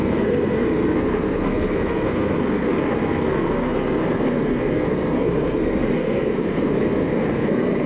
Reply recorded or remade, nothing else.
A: remade